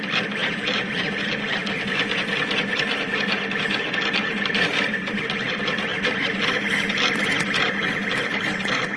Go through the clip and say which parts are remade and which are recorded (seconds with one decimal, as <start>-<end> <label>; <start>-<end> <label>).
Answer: 0.0-0.4 recorded; 0.4-1.1 remade; 1.1-9.0 recorded